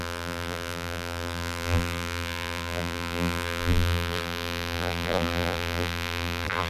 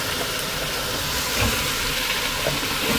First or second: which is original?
second